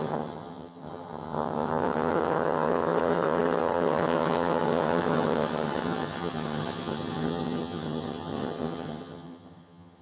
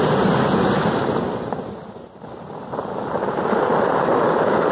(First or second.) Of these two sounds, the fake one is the first